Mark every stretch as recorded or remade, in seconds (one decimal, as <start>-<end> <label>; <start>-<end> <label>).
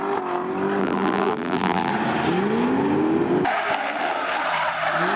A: 0.0-0.8 recorded; 0.8-1.9 remade; 1.9-5.2 recorded